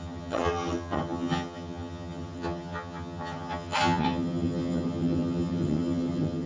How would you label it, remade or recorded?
remade